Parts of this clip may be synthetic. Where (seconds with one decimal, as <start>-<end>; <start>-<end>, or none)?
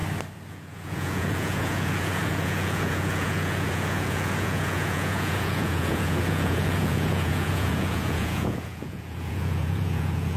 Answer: 0.5-10.4